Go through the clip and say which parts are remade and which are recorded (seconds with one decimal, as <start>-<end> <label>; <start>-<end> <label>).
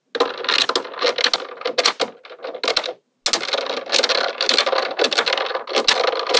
0.0-6.4 recorded